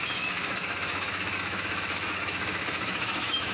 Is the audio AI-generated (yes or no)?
yes